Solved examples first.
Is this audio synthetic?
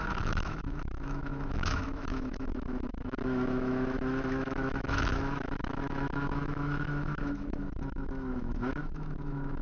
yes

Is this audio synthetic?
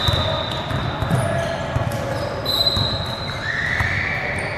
no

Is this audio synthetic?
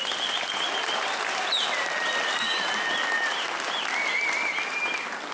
no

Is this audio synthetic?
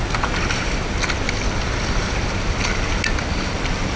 no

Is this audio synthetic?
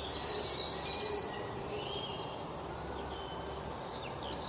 no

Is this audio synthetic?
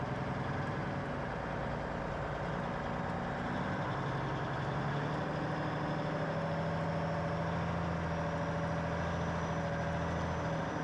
no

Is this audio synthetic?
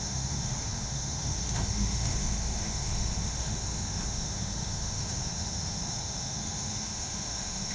yes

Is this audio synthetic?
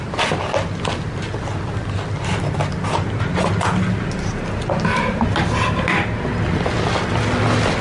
no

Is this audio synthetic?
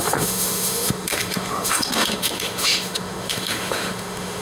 yes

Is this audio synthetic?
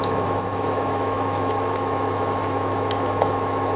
yes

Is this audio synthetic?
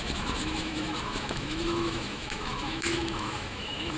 yes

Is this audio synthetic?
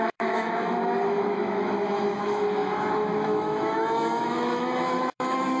yes